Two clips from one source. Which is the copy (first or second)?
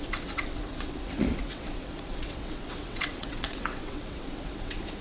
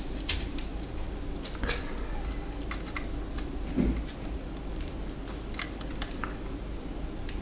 first